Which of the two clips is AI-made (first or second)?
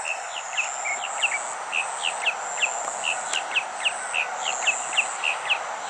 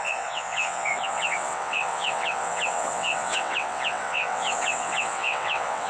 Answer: second